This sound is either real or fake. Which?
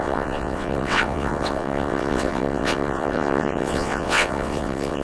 fake